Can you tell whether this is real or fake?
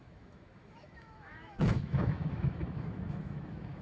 fake